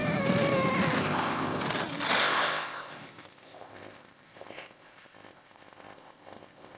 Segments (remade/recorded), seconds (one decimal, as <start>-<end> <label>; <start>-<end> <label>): 0.0-1.0 recorded; 1.0-1.6 remade; 1.6-2.2 recorded; 2.2-6.8 remade